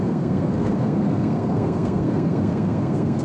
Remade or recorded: remade